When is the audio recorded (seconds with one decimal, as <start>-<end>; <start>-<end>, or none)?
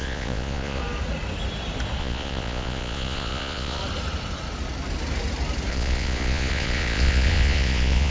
0.8-2.0; 3.8-5.7